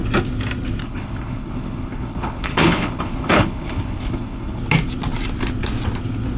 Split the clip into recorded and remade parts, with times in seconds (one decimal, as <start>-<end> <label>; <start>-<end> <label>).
0.0-0.8 recorded; 0.8-4.6 remade; 4.6-6.4 recorded